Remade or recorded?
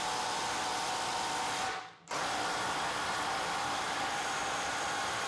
recorded